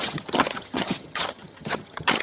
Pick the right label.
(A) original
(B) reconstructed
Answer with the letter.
B